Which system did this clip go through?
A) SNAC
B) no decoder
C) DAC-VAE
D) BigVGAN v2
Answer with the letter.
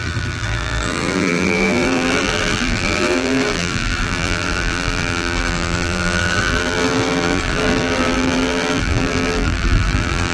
D